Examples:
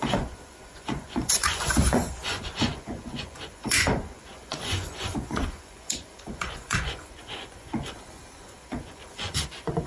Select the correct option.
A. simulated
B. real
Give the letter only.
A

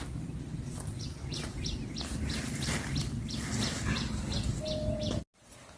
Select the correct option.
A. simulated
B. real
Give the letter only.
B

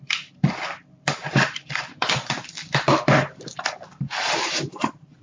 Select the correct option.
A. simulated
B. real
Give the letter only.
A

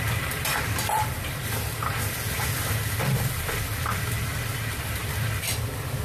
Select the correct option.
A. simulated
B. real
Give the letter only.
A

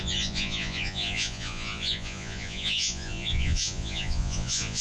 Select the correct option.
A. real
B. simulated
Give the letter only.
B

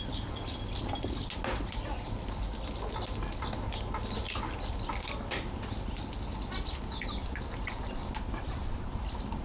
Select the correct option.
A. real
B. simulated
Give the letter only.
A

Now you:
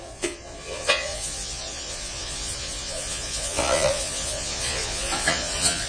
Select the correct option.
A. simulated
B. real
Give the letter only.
A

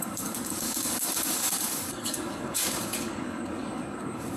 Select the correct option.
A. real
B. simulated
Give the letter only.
B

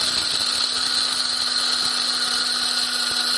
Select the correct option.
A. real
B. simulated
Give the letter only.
A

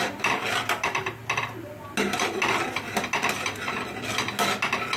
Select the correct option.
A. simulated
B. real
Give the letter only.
B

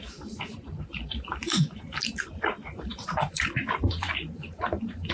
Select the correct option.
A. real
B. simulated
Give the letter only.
B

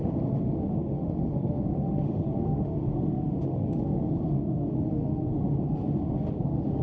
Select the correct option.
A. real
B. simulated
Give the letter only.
B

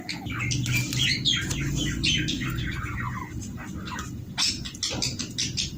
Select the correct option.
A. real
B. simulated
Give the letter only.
A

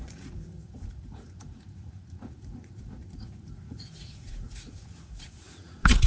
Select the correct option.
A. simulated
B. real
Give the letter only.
A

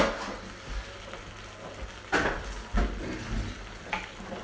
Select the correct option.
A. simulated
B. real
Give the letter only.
B